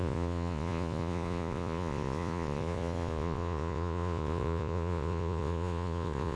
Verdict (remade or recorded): remade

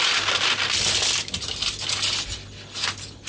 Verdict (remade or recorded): recorded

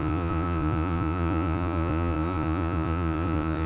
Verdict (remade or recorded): remade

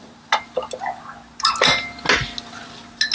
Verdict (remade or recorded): recorded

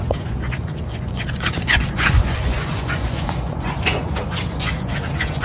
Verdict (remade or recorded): remade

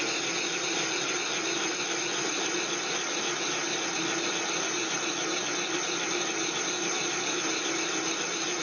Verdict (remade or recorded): recorded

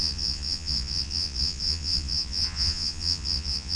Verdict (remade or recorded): remade